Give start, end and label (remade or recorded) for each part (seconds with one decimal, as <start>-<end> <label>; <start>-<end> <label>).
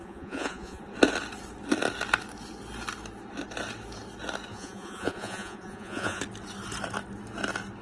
0.0-0.8 remade; 0.8-4.5 recorded; 4.5-6.2 remade; 6.2-7.8 recorded